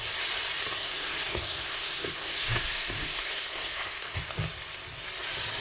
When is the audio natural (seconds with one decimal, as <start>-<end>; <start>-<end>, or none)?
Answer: 0.0-0.8; 4.2-5.6